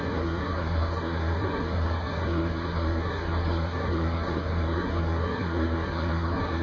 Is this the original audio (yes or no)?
no